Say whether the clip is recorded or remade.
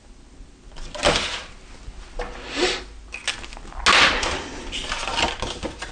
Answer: recorded